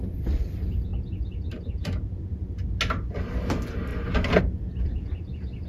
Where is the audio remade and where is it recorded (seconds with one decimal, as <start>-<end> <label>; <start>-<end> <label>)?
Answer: 0.0-5.7 recorded